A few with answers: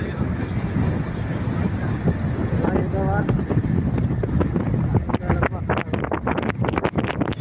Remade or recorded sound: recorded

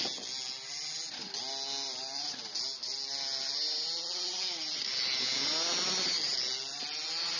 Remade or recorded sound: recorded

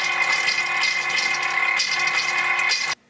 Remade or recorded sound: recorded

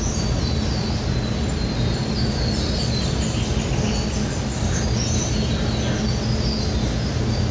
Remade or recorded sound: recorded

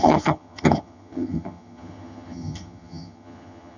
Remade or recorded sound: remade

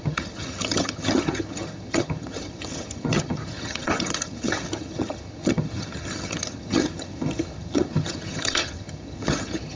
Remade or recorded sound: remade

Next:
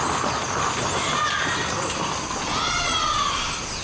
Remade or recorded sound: recorded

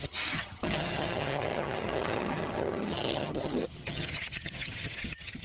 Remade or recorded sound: remade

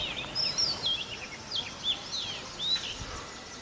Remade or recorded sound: recorded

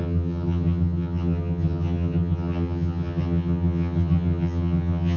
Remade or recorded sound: remade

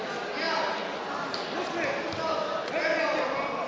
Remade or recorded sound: recorded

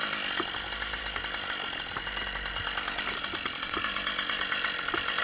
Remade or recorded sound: recorded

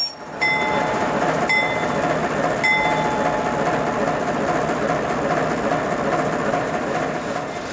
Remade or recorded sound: recorded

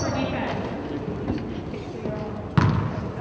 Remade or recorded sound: recorded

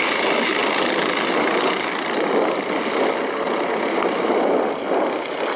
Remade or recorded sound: recorded